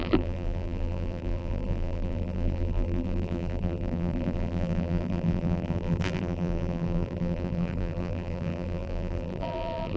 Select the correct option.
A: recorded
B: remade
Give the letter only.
B